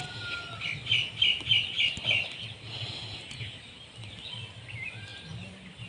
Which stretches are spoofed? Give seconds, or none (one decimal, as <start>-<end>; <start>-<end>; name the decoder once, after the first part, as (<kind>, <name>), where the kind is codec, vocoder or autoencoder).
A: none